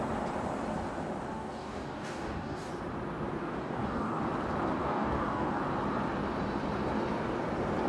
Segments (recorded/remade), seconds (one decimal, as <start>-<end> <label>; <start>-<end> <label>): 0.0-1.3 recorded; 1.3-2.7 remade; 2.7-3.4 recorded; 3.4-4.2 remade; 4.2-4.8 recorded; 4.8-5.6 remade; 5.6-7.9 recorded